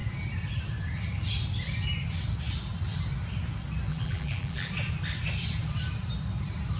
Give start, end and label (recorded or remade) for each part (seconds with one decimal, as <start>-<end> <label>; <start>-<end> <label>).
0.0-3.9 recorded; 3.9-4.7 remade; 4.7-6.8 recorded